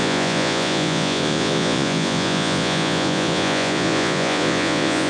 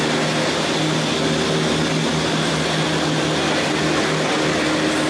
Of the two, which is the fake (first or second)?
first